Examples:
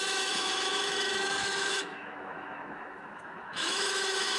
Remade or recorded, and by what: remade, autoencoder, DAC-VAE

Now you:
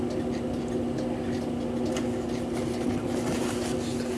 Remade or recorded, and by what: recorded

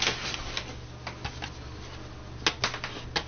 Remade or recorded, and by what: recorded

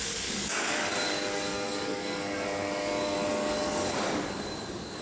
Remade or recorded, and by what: remade, codec, DAC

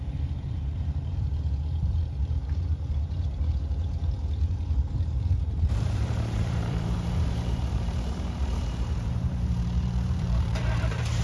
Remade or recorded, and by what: remade, vocoder, BigVGAN v2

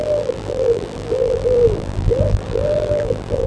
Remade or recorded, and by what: remade, vocoder, BigVGAN v2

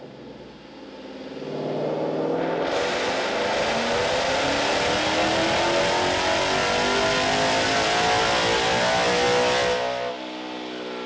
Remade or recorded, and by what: recorded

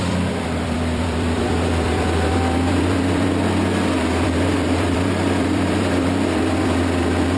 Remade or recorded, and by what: remade, vocoder, BigVGAN v2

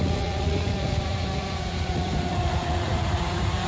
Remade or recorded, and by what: remade, vocoder, Vocos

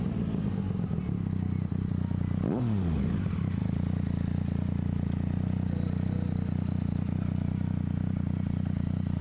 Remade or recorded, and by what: recorded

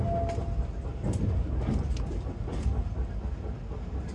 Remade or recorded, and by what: recorded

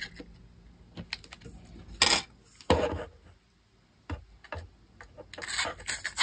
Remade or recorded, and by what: recorded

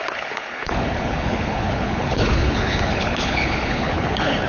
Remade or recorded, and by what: remade, codec, HILCodec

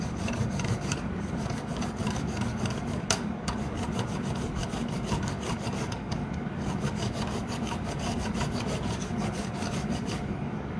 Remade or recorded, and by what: remade, codec, DAC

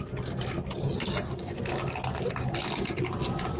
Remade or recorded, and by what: recorded